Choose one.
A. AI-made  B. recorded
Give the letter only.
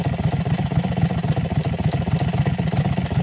B